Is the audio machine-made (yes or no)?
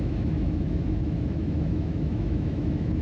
yes